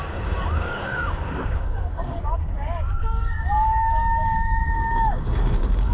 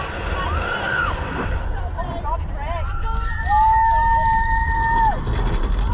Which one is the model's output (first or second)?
first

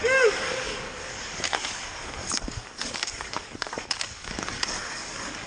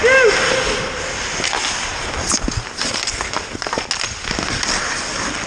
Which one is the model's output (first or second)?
first